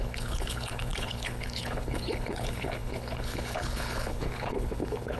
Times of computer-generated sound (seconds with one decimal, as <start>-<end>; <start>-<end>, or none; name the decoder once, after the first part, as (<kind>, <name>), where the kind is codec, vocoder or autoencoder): 0.0-5.2 (codec, HILCodec)